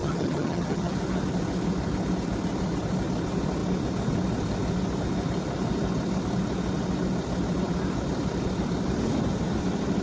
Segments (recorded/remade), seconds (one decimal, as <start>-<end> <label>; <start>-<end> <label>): 0.0-0.9 remade; 0.9-10.0 recorded